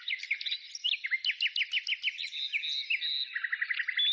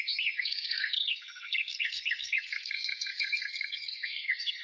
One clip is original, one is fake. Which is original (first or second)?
first